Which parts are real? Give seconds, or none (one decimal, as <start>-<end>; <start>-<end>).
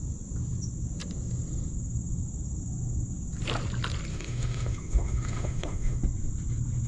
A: 0.0-4.1; 6.0-6.9